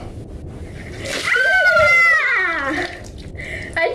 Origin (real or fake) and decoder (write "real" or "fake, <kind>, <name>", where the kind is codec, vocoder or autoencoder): real